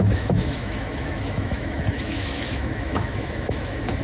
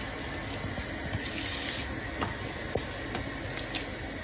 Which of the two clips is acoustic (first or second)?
second